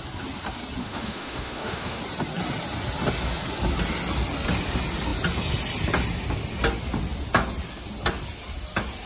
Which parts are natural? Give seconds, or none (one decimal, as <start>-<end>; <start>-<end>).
0.0-0.8; 2.0-9.1